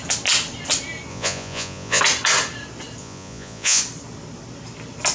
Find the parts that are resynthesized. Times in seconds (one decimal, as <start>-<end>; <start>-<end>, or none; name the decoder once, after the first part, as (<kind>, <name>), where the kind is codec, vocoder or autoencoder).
1.1-2.0 (vocoder, Vocos); 3.0-3.8

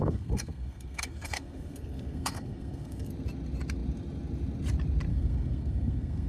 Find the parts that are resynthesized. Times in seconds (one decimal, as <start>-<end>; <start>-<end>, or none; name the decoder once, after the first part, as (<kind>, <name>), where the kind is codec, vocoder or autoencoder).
0.0-3.1 (codec, SNAC); 5.1-6.3